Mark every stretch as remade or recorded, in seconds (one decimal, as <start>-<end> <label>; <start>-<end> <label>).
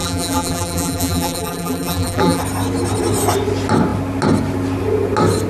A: 0.0-2.4 remade; 2.4-5.5 recorded